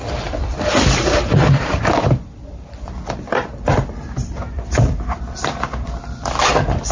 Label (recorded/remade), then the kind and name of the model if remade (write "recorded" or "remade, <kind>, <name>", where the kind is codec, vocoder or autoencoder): remade, vocoder, BigVGAN v2